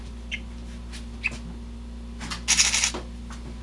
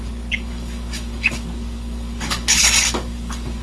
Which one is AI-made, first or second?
second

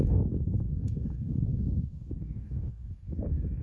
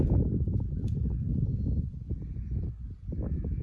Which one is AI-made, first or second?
first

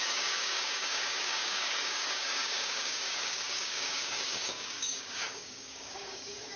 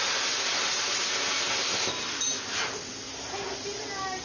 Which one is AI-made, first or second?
first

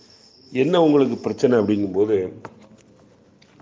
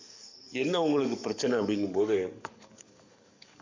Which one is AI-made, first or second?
second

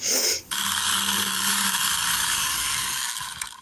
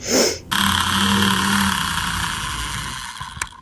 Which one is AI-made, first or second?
first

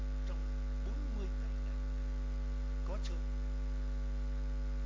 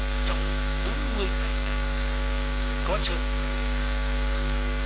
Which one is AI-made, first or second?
second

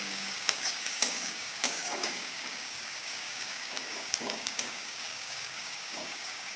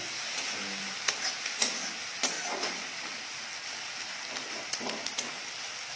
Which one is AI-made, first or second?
first